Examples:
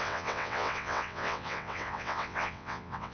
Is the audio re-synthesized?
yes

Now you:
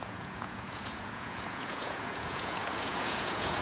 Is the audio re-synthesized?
yes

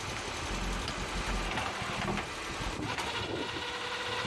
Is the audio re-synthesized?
no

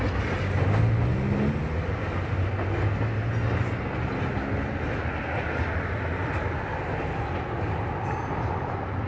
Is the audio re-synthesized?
no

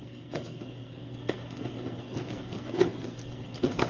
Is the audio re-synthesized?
yes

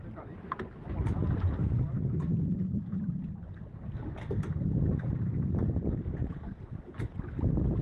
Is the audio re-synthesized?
no